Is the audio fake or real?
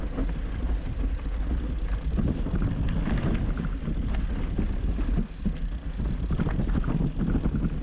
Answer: real